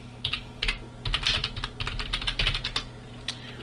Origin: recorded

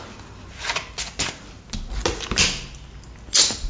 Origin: recorded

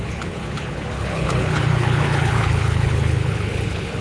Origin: remade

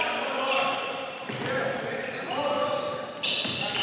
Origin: recorded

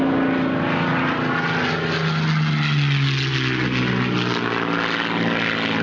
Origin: recorded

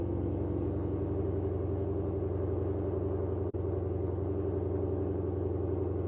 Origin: recorded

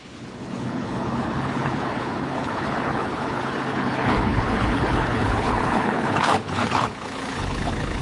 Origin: remade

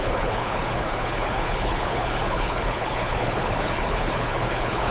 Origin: remade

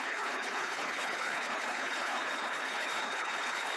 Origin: remade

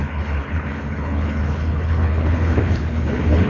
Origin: remade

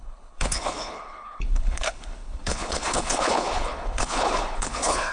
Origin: remade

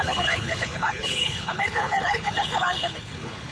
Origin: remade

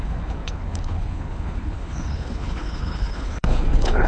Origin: remade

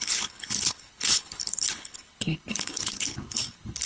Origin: remade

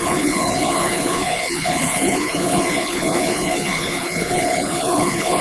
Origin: remade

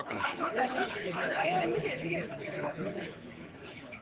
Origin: remade